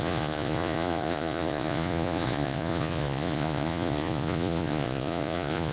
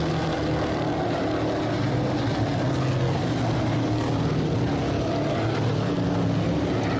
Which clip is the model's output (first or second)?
first